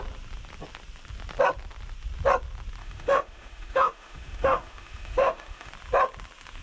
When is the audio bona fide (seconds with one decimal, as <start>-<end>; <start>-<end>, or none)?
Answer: 0.0-2.8; 5.7-6.6